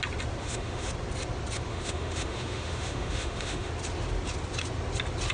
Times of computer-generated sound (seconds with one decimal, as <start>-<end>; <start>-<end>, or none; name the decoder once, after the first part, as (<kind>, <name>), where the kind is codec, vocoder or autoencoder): 0.4-0.9 (autoencoder, DAC-VAE); 1.7-3.7